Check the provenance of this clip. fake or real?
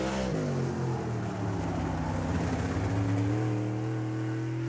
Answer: real